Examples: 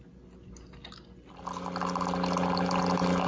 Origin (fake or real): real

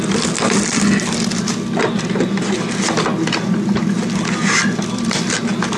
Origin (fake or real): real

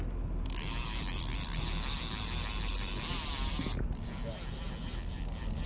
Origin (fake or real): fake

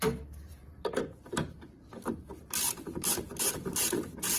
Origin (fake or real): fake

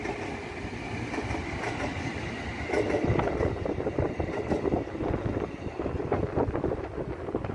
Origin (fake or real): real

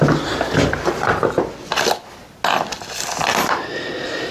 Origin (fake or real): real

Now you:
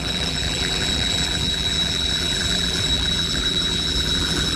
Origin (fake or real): fake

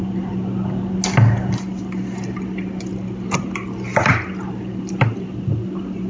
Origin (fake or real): real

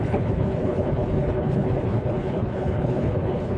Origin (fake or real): fake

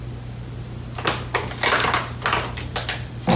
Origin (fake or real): real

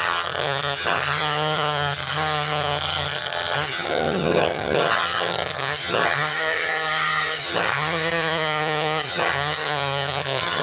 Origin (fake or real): fake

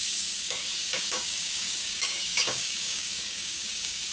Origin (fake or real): fake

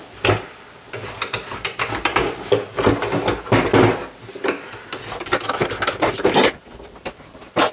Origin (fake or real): fake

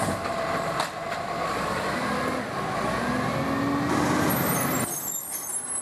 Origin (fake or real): real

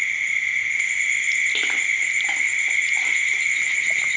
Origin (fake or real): real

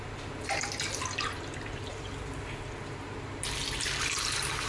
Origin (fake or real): real